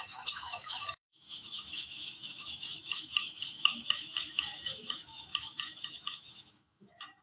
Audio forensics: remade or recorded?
remade